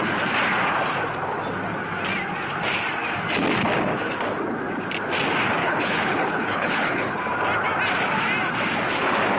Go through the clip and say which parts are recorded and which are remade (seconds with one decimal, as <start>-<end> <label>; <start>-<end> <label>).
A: 0.0-5.6 recorded; 5.6-7.2 remade; 7.2-9.4 recorded